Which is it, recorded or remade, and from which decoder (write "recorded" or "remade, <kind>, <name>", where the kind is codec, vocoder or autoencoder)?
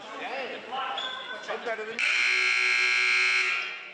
recorded